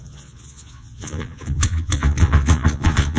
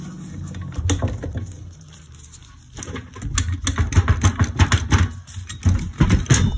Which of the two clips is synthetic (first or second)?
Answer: first